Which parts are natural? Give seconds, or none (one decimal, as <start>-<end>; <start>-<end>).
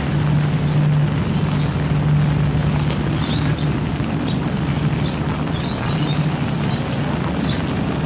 0.0-8.1